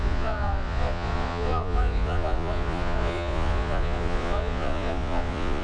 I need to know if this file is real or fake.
fake